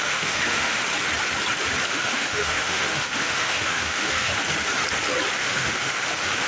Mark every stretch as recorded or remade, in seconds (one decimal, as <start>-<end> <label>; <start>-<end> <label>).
0.0-0.8 remade; 0.8-1.9 recorded; 1.9-4.3 remade; 4.3-5.4 recorded; 5.4-6.5 remade